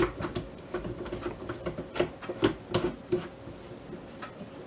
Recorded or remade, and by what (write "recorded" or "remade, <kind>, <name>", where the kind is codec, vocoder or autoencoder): recorded